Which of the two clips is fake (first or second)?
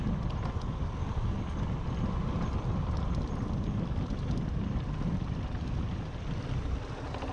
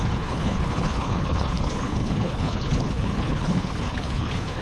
second